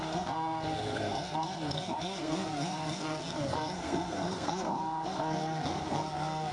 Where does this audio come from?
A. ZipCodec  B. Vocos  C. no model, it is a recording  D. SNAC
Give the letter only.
D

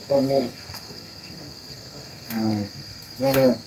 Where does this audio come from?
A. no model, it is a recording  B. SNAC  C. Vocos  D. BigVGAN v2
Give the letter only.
B